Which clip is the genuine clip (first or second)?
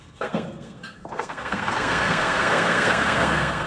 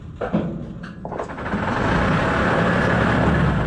second